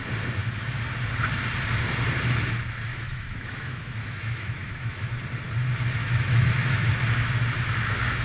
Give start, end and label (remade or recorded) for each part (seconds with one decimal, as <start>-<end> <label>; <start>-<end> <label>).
0.0-2.9 recorded; 2.9-5.1 remade; 5.1-6.0 recorded; 6.0-6.9 remade; 6.9-8.2 recorded